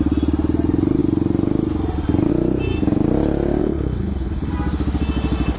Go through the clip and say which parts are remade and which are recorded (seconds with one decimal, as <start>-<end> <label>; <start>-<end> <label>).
0.0-3.6 recorded; 3.6-4.5 remade; 4.5-5.6 recorded